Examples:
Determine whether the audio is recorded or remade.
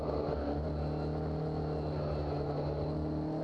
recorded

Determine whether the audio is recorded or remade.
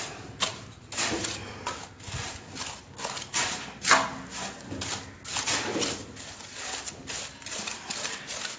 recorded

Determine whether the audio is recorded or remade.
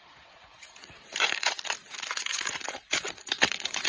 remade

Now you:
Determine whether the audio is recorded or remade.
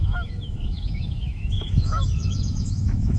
remade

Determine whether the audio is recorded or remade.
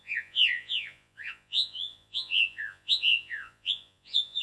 remade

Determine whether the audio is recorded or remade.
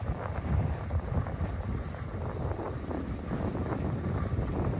recorded